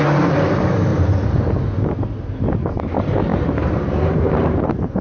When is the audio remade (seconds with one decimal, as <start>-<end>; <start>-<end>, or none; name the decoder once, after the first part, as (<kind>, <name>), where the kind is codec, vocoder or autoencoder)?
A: 3.3-5.0 (vocoder, BigVGAN v2)